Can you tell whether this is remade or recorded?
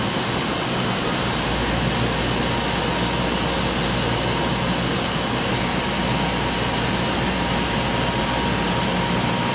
recorded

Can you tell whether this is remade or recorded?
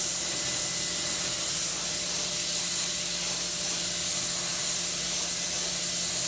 recorded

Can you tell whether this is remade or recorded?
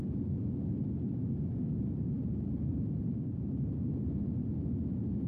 recorded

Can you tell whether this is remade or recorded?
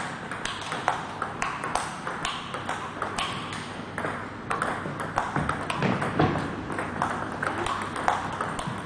remade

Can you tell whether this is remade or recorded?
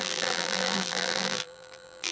remade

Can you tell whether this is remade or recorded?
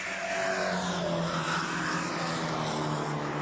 recorded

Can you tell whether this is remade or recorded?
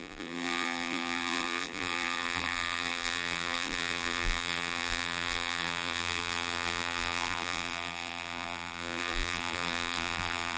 remade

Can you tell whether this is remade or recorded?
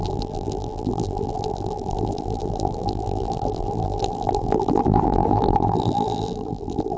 remade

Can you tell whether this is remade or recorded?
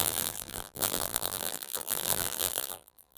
remade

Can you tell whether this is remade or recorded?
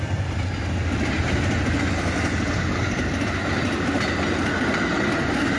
recorded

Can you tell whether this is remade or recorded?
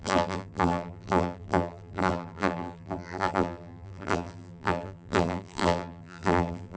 remade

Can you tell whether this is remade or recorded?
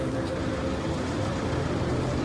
remade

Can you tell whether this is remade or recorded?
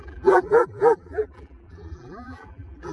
remade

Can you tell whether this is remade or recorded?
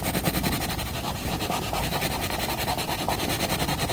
recorded